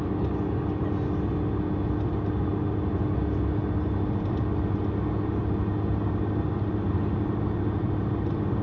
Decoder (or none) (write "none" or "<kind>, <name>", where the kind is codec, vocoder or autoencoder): none